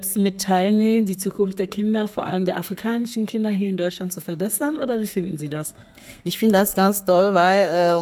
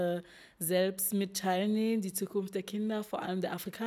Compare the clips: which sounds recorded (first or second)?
second